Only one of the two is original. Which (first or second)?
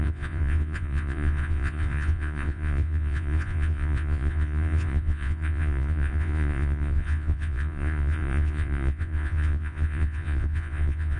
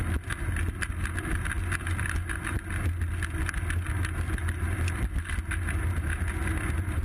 second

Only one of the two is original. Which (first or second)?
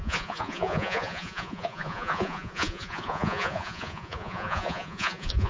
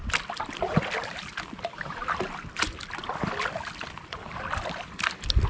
second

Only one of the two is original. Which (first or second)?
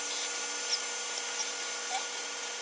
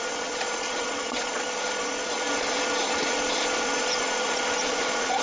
first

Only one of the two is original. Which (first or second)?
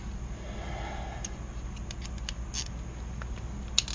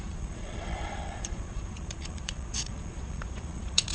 first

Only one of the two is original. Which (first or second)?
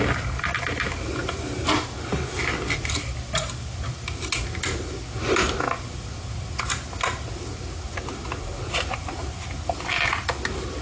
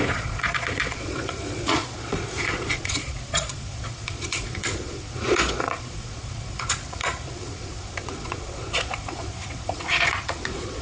first